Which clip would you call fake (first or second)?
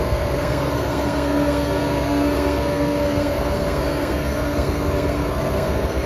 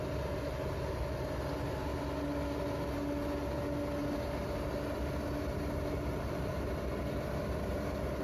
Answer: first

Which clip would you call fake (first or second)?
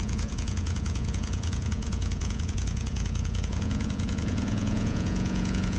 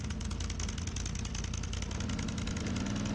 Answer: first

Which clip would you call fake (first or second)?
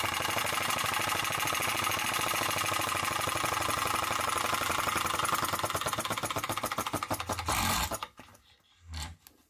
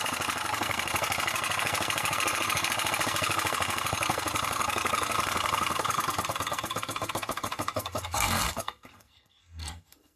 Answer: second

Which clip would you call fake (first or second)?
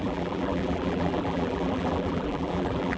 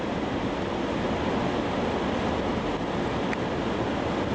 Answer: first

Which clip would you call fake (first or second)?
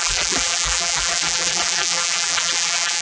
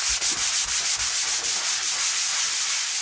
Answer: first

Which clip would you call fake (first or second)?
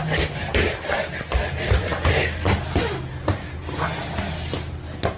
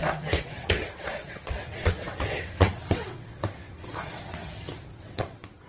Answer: second